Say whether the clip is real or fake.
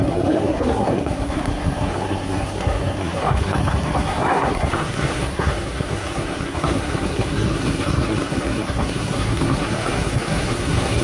fake